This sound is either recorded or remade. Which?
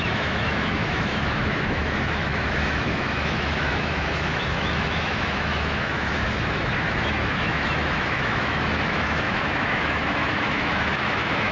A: remade